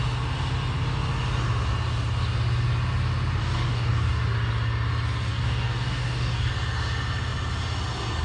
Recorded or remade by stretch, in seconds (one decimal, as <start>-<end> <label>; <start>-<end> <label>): 0.0-3.4 recorded; 3.4-4.2 remade; 4.2-5.3 recorded; 5.3-6.5 remade; 6.5-8.2 recorded